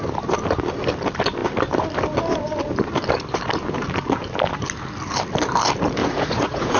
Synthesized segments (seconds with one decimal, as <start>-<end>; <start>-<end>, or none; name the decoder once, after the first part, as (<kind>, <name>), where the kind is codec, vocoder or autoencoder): 6.0-6.8 (vocoder, Vocos)